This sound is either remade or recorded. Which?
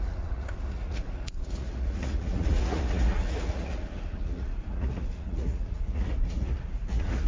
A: remade